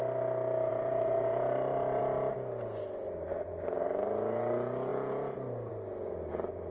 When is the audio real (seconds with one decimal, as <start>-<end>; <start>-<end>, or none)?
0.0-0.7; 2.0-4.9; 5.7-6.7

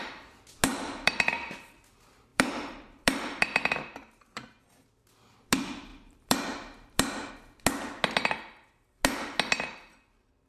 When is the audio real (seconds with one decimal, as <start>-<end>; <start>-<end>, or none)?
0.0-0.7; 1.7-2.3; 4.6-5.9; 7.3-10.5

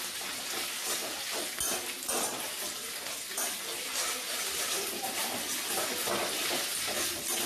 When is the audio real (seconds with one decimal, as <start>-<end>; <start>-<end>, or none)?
0.0-7.5

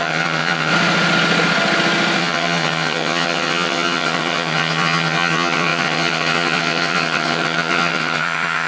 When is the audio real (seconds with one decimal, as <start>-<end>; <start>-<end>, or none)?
0.7-2.2